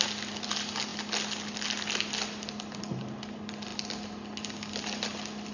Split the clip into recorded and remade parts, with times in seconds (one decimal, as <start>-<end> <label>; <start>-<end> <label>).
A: 0.0-5.5 recorded